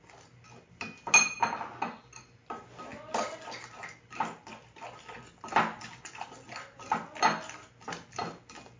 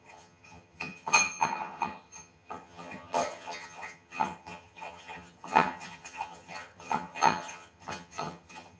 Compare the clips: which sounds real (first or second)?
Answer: first